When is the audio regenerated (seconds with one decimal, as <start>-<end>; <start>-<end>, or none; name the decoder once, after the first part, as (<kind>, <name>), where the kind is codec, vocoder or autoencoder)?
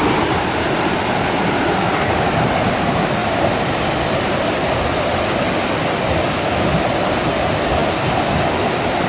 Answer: 3.2-3.9 (vocoder, BigVGAN v2)